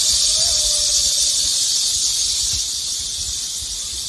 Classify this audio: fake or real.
real